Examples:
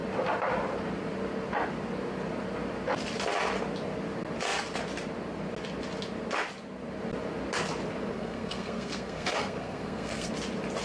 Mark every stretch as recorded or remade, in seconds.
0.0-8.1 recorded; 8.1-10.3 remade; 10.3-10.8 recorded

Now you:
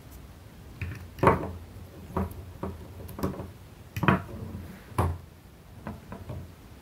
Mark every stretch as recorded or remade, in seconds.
0.0-2.0 recorded; 2.0-3.2 remade; 3.2-5.1 recorded; 5.1-5.9 remade; 5.9-6.8 recorded